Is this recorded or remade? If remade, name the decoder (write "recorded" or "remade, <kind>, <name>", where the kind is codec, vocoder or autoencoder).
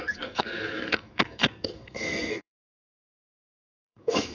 remade, codec, SNAC